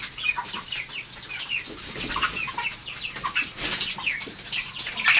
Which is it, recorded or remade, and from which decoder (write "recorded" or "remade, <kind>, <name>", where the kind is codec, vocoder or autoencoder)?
recorded